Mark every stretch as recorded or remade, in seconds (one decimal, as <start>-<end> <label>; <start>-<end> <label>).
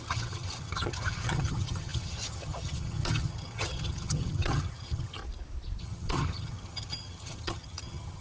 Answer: 0.0-5.2 remade; 5.2-5.8 recorded; 5.8-8.2 remade